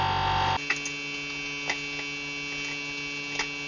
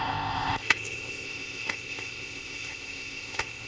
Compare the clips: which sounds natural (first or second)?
first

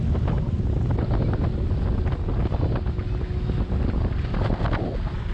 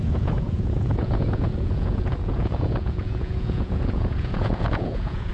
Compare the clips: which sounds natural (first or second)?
first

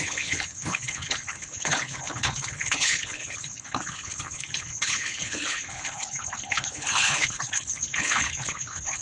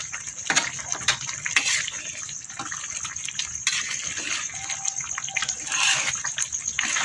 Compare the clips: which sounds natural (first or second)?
second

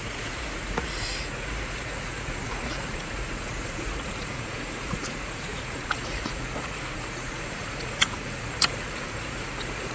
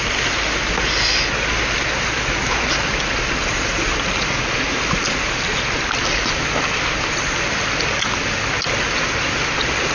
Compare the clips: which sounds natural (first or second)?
second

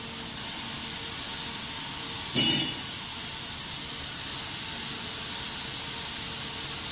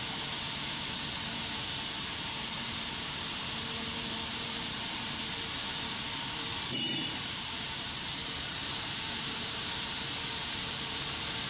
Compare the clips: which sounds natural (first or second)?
first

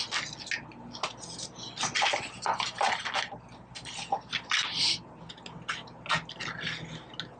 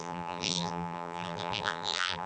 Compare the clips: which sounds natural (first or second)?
first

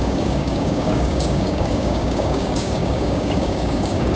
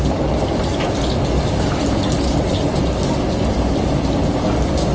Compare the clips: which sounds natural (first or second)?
second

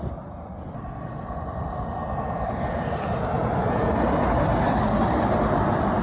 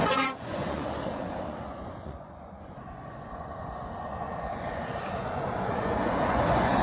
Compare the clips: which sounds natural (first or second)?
first